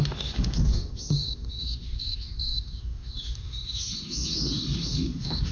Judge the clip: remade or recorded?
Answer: remade